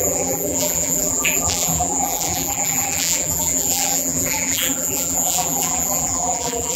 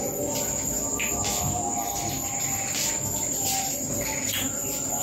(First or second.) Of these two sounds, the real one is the second